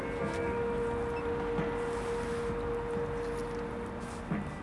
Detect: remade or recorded recorded